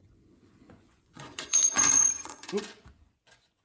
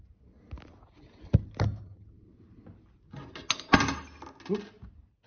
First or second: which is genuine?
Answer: second